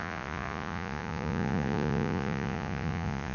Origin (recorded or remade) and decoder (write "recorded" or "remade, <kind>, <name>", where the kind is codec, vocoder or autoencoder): remade, vocoder, Vocos